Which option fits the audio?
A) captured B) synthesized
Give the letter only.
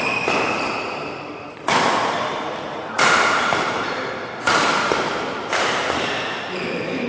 B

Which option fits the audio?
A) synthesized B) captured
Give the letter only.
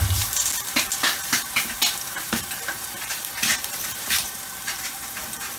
A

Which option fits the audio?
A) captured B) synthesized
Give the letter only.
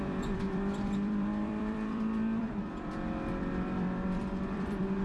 B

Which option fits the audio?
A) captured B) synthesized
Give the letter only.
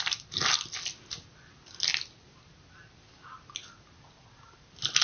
A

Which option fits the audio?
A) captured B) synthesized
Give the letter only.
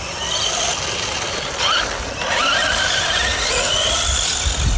A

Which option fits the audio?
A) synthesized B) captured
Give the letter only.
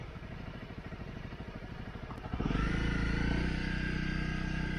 B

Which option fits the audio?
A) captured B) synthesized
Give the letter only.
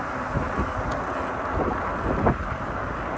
A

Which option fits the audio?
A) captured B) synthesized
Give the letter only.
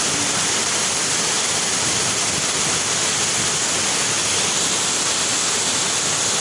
A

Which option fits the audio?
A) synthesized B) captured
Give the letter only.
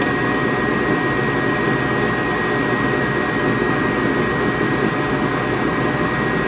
B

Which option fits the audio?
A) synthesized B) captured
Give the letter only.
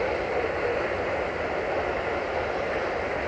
B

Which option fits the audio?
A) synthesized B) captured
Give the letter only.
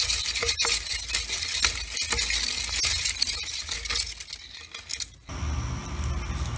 B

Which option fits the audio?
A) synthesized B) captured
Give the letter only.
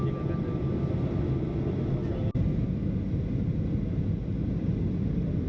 B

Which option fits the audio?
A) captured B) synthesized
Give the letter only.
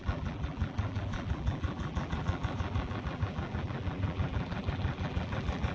B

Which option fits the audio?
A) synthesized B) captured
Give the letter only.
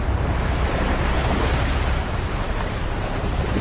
A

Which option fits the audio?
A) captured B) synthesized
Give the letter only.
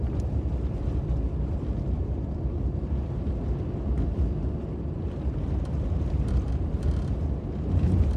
A